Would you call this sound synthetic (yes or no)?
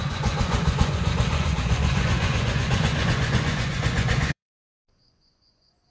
yes